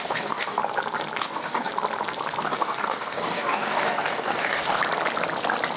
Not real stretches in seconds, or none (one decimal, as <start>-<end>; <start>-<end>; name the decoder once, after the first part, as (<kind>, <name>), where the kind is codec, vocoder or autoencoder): 0.0-0.6 (codec, DAC); 1.2-1.7; 2.4-4.8